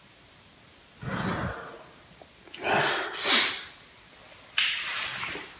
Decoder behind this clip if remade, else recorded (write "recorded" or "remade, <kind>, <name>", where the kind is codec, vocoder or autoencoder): recorded